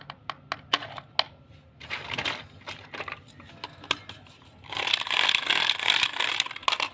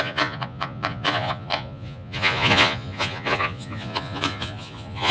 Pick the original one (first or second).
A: first